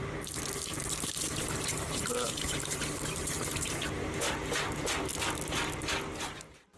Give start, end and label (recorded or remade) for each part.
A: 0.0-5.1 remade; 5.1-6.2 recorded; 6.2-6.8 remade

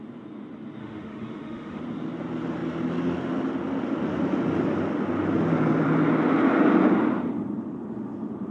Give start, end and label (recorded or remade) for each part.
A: 0.0-0.8 recorded; 0.8-1.8 remade; 1.8-8.5 recorded